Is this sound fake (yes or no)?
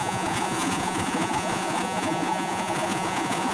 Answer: yes